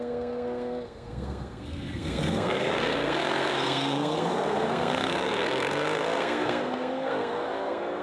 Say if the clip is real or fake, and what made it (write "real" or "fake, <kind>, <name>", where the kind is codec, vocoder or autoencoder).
fake, codec, SNAC